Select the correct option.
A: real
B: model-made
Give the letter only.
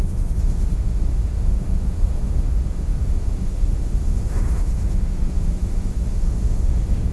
B